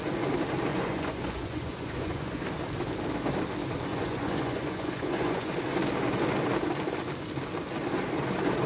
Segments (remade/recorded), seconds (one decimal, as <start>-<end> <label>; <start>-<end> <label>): 0.0-0.7 recorded; 0.7-2.4 remade; 2.4-3.9 recorded; 3.9-5.5 remade; 5.5-8.7 recorded